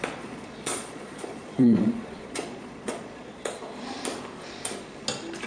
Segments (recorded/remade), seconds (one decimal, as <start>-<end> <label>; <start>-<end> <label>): 0.0-3.6 remade; 3.6-5.5 recorded